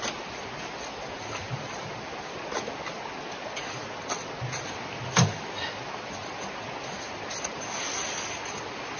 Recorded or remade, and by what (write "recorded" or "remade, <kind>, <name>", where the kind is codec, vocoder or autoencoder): recorded